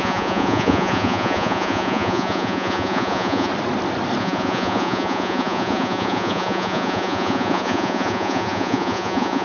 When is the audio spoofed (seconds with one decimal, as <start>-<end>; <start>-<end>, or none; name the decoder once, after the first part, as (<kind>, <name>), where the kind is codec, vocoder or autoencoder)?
0.0-3.5 (vocoder, Vocos); 4.2-9.4